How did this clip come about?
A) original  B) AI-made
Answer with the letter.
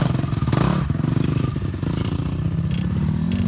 A